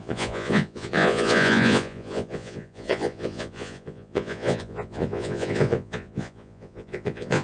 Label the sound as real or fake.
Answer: fake